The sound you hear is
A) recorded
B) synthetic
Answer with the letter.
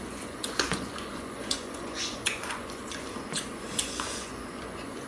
B